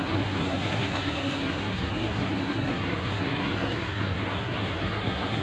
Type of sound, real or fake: fake